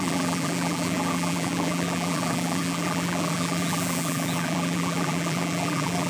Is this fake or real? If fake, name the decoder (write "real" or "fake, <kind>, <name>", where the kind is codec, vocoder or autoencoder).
fake, vocoder, BigVGAN v2